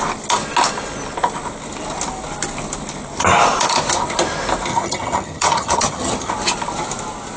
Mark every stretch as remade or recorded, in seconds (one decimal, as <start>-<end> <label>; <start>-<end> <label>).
0.0-4.7 recorded; 4.7-6.3 remade; 6.3-7.4 recorded